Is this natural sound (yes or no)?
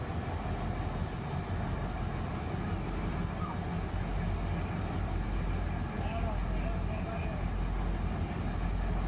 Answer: yes